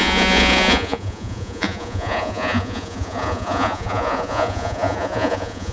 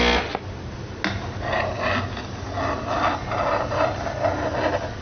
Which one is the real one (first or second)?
second